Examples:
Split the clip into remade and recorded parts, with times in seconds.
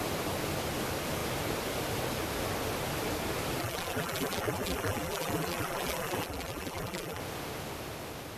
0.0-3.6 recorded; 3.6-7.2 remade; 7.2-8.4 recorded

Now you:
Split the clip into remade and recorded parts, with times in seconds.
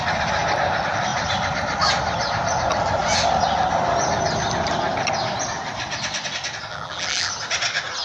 0.0-6.7 recorded; 6.7-7.3 remade; 7.3-8.0 recorded